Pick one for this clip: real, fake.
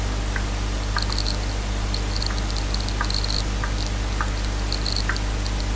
real